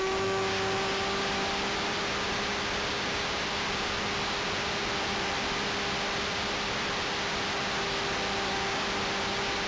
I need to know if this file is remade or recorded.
recorded